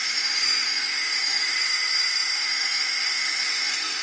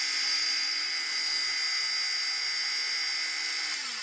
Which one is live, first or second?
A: second